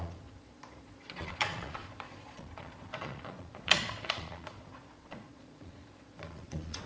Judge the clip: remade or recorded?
remade